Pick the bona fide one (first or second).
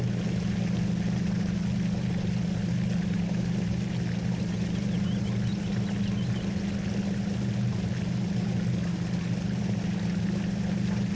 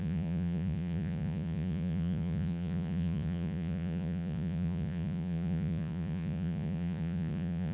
first